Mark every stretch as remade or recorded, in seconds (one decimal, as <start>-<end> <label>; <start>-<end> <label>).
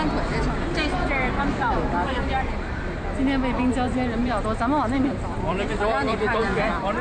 0.0-4.2 recorded; 4.2-6.6 remade; 6.6-7.0 recorded